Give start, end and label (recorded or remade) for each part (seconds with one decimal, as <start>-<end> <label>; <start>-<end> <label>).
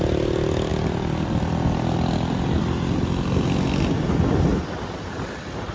0.0-0.7 recorded; 0.7-2.6 remade; 2.6-5.7 recorded